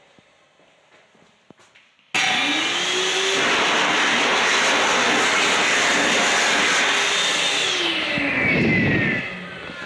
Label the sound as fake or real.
real